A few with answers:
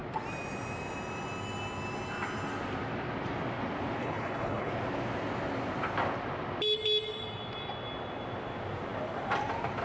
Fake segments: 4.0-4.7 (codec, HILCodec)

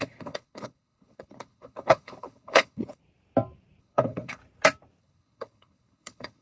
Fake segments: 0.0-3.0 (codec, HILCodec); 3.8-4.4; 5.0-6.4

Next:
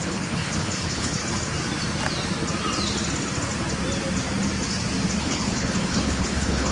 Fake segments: 0.0-1.2 (codec, HILCodec); 5.2-6.7

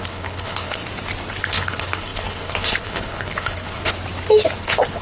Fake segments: 0.0-0.8 (codec, HILCodec); 1.4-3.9; 4.6-5.0

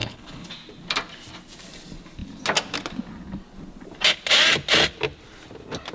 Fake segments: 0.0-0.5 (codec, HILCodec)